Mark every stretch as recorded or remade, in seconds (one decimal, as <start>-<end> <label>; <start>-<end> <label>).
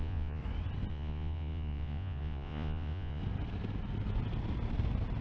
0.0-0.4 remade; 0.4-0.9 recorded; 0.9-3.2 remade; 3.2-5.2 recorded